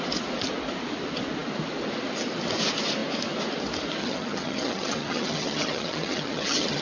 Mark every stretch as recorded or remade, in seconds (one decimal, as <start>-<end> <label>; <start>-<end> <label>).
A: 0.0-4.0 recorded; 4.0-6.8 remade